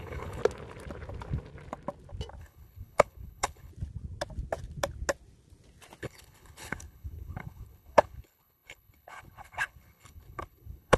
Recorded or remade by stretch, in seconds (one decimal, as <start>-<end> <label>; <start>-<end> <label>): 0.0-0.4 remade; 0.4-2.4 recorded; 2.4-3.7 remade; 3.7-6.0 recorded; 6.0-11.0 remade